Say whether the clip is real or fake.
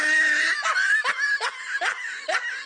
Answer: real